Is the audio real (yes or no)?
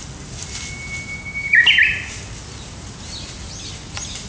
yes